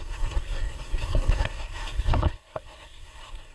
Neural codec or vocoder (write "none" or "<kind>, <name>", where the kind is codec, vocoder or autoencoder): codec, SNAC